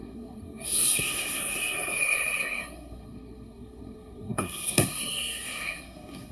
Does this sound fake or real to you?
fake